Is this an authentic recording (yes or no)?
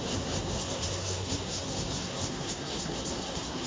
no